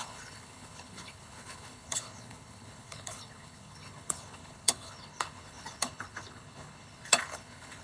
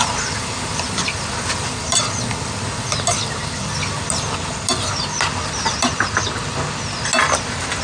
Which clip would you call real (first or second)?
second